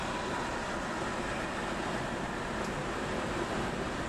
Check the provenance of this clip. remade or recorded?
recorded